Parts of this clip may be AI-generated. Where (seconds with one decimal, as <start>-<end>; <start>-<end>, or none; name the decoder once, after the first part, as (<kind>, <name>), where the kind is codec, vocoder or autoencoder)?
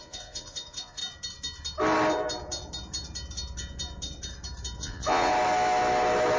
0.0-1.0 (vocoder, Vocos); 4.8-5.3